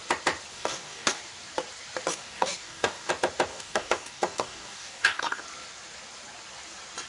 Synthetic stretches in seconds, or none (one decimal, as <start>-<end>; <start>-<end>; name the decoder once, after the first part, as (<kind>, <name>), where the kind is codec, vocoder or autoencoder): 0.5-1.2 (codec, DAC); 2.1-3.1; 3.5-5.4